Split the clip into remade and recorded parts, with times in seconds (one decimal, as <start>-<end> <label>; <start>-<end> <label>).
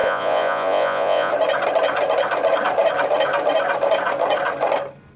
0.0-1.3 remade; 1.3-5.2 recorded